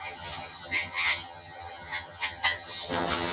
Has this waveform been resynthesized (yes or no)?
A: yes